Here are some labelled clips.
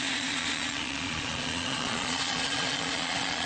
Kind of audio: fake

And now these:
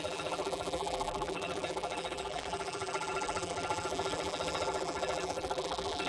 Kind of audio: fake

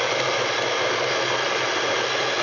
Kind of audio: real